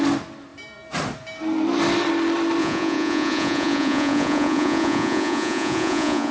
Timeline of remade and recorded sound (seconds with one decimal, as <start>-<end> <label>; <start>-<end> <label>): 0.0-2.6 recorded; 2.6-6.3 remade